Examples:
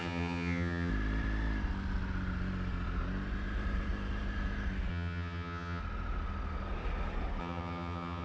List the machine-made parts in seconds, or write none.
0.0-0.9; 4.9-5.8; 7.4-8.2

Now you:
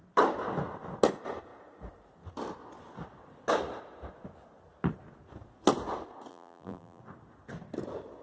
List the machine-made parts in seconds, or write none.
6.3-7.0

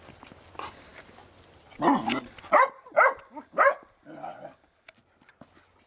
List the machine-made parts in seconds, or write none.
none

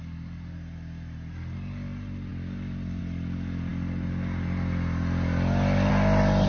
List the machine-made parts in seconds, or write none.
none

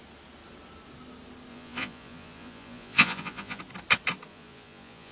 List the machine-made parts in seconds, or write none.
1.5-3.6; 4.3-5.1